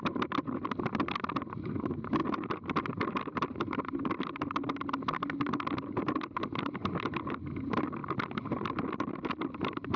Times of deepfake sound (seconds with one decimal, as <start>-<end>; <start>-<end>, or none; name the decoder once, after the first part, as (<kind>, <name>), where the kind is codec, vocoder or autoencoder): none